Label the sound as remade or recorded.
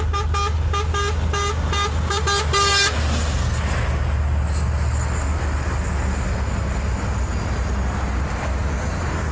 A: recorded